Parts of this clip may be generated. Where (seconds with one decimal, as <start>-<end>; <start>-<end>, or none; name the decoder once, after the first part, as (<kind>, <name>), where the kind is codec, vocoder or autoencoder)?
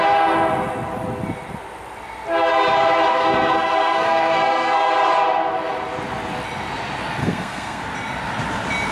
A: 3.1-4.9 (codec, SNAC); 7.2-7.8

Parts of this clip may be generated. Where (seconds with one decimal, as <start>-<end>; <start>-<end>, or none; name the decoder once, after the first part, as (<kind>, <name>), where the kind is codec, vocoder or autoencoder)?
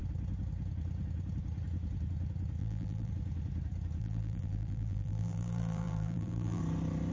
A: 2.6-3.1 (vocoder, BigVGAN v2); 4.0-6.6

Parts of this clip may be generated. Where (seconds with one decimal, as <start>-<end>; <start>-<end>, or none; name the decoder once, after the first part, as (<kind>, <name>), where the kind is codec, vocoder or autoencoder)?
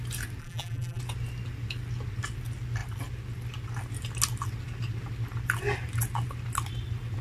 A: 0.4-1.0 (vocoder, BigVGAN v2)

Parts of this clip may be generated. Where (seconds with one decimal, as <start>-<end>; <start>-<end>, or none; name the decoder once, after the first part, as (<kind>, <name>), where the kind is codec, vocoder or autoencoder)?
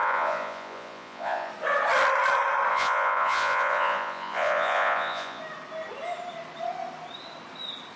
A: 0.0-1.5 (vocoder, Vocos); 2.7-5.4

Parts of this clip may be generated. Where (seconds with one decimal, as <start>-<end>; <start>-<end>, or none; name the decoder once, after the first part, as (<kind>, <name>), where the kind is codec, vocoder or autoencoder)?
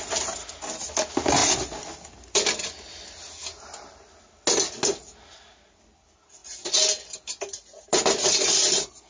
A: none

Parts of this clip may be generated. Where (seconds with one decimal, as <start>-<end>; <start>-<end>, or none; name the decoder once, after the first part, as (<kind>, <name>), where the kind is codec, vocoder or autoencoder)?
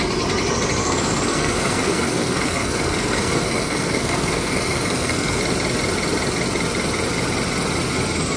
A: 0.8-5.4 (codec, SNAC)